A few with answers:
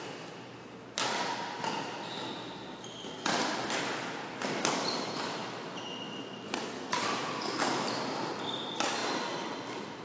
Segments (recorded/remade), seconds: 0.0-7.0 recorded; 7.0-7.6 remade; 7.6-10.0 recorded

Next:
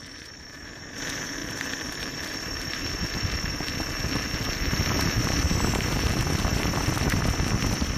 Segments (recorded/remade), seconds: 0.0-1.4 recorded; 1.4-3.5 remade; 3.5-6.5 recorded; 6.5-7.2 remade; 7.2-8.0 recorded

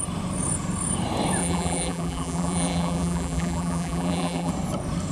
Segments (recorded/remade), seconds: 0.0-1.4 recorded; 1.4-4.5 remade; 4.5-5.1 recorded

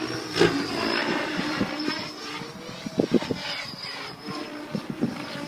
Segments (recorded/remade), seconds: 0.0-1.0 recorded; 1.0-2.4 remade; 2.4-3.4 recorded; 3.4-4.4 remade; 4.4-5.5 recorded

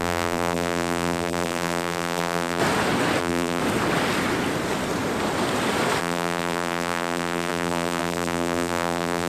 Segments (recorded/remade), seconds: 0.0-2.6 remade; 2.6-3.2 recorded; 3.2-3.6 remade; 3.6-6.0 recorded; 6.0-9.3 remade

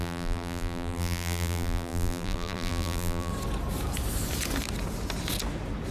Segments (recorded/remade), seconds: 0.0-3.3 remade; 3.3-5.9 recorded